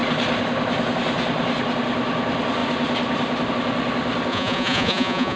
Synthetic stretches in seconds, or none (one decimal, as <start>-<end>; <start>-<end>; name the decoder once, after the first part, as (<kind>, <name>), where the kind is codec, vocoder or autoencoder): 4.3-5.4 (vocoder, Vocos)